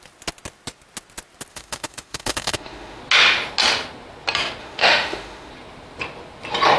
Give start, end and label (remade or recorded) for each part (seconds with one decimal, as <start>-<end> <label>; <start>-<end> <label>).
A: 0.0-1.5 recorded; 1.5-3.0 remade; 3.0-4.6 recorded; 4.6-5.5 remade; 5.5-6.8 recorded